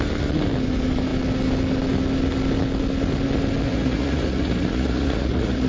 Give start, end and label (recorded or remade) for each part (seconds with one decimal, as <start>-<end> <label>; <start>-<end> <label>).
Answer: 0.0-3.7 recorded; 3.7-5.7 remade